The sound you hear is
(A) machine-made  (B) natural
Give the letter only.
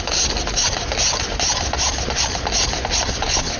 B